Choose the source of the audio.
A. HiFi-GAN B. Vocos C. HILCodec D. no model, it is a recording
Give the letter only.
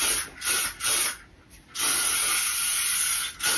D